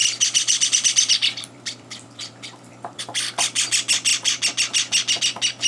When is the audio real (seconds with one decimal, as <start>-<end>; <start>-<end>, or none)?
3.0-5.7